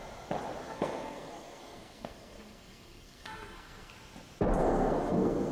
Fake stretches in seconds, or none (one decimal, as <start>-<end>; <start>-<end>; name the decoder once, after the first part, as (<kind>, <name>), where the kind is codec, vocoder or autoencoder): 0.6-3.9 (codec, SNAC); 4.6-5.5